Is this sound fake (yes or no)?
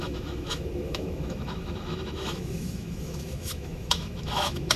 yes